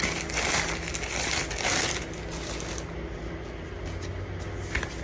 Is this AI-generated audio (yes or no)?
no